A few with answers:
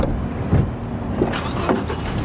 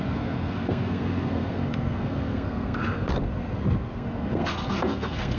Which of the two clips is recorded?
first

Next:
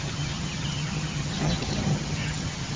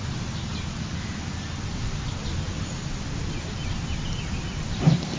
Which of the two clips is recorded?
second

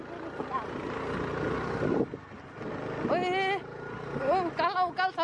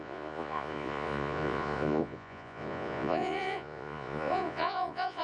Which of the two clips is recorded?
first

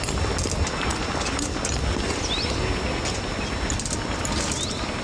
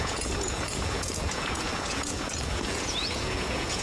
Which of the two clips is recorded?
first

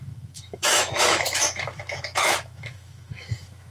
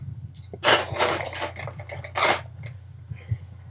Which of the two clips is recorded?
second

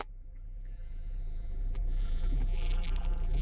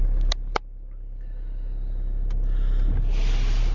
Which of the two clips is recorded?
second